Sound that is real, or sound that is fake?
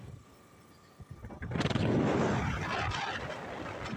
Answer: real